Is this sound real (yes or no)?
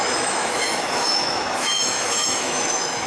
no